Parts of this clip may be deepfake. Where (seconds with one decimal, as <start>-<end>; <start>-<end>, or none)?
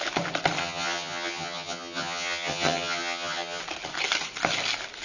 0.6-3.6